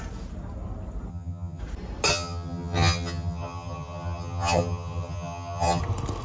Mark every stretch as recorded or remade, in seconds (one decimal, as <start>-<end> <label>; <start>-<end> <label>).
0.0-1.1 recorded; 1.1-1.6 remade; 1.6-2.1 recorded; 2.1-5.8 remade; 5.8-6.2 recorded